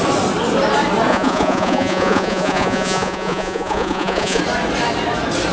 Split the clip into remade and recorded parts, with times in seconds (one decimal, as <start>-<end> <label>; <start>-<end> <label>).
0.0-1.1 recorded; 1.1-4.4 remade; 4.4-5.5 recorded